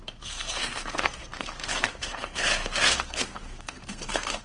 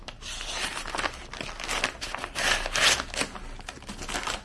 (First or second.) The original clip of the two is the second